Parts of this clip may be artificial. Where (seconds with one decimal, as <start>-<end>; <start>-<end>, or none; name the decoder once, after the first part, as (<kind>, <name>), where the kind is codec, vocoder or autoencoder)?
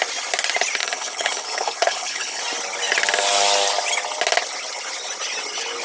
0.8-2.4 (codec, HILCodec)